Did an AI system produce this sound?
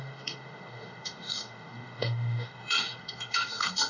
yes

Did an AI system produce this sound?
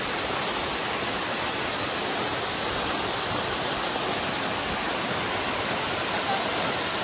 no